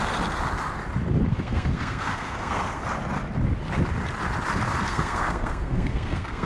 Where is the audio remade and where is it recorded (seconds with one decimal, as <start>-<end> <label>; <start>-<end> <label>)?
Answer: 0.0-1.3 recorded; 1.3-2.8 remade; 2.8-4.9 recorded; 4.9-6.5 remade